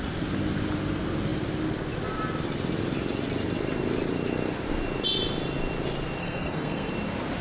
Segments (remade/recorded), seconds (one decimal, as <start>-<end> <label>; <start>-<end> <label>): 0.0-6.2 recorded; 6.2-6.9 remade; 6.9-7.4 recorded